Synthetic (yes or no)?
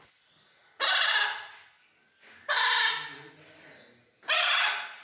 no